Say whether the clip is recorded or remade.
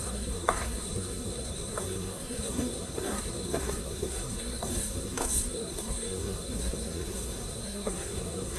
remade